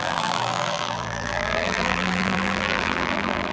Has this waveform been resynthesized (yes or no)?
yes